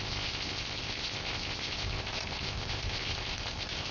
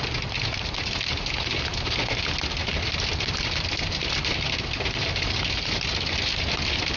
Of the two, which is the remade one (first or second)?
first